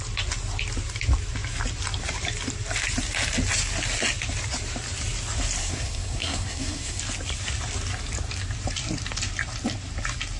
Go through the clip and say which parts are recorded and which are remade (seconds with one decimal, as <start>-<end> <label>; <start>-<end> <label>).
0.0-5.6 recorded; 5.6-7.0 remade; 7.0-10.4 recorded